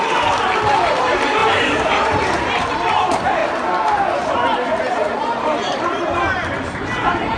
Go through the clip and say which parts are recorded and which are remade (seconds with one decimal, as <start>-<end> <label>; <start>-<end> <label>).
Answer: 0.0-3.4 remade; 3.4-4.9 recorded; 4.9-7.4 remade